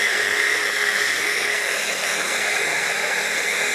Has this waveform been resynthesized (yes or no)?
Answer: yes